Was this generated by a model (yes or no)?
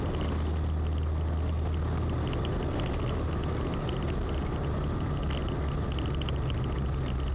no